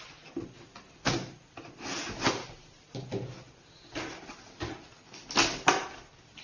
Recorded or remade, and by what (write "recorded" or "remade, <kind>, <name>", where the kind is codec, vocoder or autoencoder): recorded